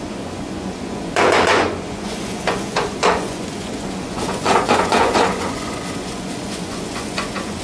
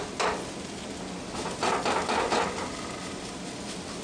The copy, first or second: first